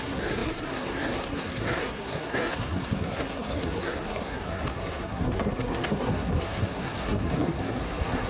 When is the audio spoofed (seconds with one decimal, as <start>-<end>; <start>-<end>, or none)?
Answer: 0.0-8.3

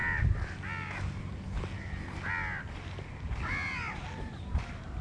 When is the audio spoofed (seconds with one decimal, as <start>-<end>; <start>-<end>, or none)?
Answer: none

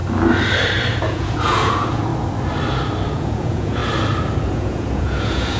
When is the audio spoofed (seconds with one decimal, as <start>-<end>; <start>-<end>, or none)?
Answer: 1.0-2.1; 3.1-3.8; 4.5-5.6

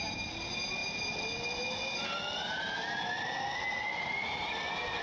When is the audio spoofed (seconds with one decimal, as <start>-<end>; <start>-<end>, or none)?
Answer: none

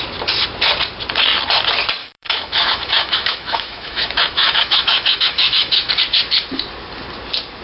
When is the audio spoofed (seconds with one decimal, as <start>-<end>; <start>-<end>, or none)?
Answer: 2.0-5.9